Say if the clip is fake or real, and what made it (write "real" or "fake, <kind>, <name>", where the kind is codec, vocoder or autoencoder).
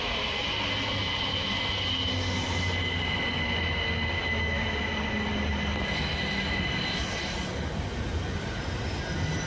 real